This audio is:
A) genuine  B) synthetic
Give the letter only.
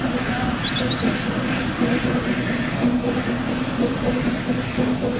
A